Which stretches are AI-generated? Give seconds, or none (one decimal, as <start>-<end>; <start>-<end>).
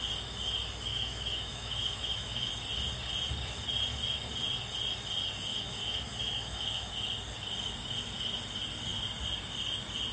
0.9-2.5; 5.5-6.9